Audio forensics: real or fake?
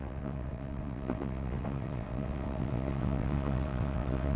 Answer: fake